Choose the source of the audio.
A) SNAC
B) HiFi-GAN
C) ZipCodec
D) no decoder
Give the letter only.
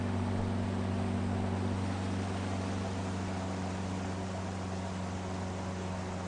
D